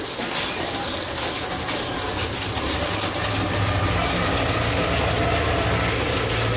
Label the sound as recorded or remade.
recorded